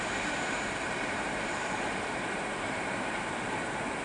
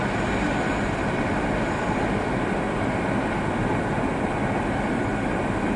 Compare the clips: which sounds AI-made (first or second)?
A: first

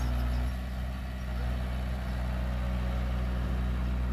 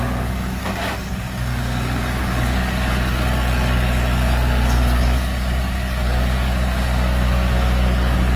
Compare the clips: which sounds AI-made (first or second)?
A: second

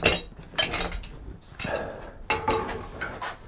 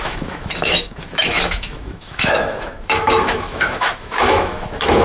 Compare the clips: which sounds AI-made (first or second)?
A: second